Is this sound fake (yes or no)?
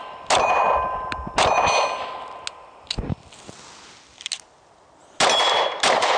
no